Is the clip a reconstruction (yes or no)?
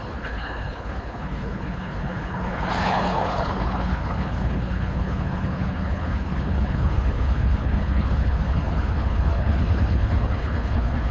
yes